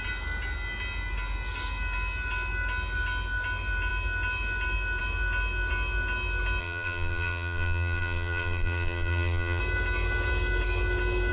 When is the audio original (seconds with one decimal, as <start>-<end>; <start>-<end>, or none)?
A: 0.0-6.6; 9.6-11.3